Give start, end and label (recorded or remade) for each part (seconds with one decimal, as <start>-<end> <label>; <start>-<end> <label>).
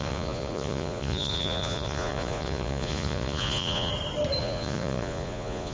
0.0-3.9 remade; 3.9-4.4 recorded; 4.4-5.7 remade